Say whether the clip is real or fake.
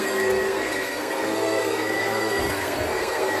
fake